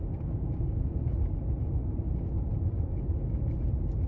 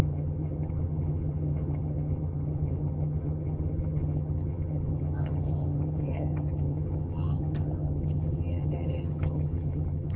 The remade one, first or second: second